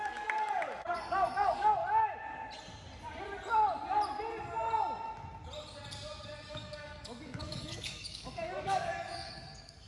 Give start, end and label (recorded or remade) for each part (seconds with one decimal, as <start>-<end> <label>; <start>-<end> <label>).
0.0-1.8 remade; 1.8-6.5 recorded; 6.5-9.9 remade